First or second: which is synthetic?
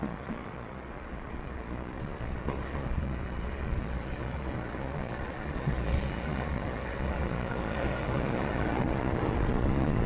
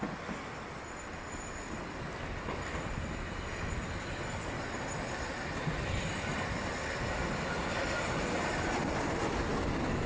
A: first